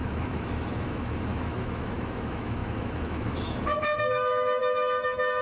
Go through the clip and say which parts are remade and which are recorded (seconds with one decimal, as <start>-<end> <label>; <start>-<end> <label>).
0.0-5.4 remade